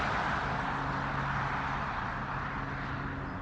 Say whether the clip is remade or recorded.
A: recorded